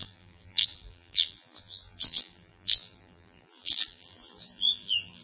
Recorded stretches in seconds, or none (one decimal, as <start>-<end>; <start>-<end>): none